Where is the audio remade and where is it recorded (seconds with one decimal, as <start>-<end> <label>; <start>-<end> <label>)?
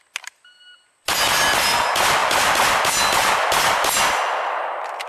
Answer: 0.0-5.1 recorded